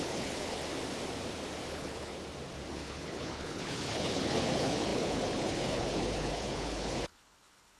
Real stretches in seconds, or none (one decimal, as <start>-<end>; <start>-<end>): 0.6-1.7; 2.1-2.7